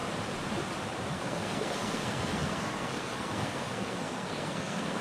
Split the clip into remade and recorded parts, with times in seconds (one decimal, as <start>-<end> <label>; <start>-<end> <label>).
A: 0.0-1.1 recorded; 1.1-5.0 remade